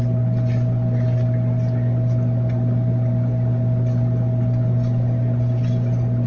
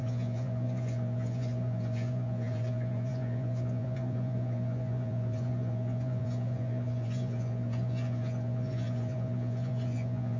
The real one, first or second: first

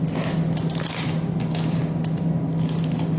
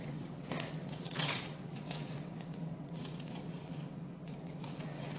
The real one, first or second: first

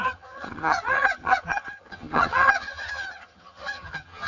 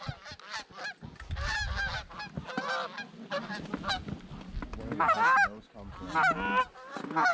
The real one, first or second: second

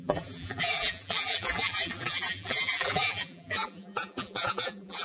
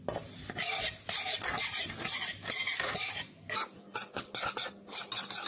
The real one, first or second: second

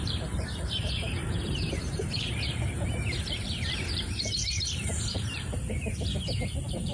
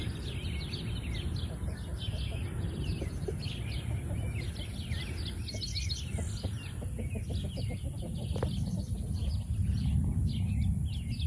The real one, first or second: second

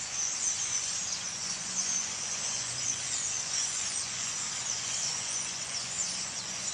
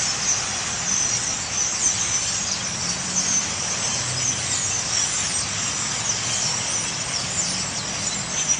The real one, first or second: second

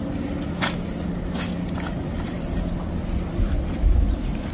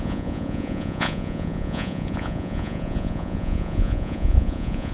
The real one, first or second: first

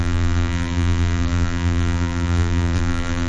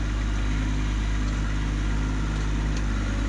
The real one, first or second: second